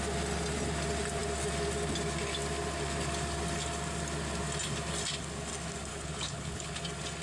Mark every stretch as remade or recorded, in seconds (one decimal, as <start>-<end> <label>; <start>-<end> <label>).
0.0-5.9 recorded; 5.9-6.8 remade; 6.8-7.2 recorded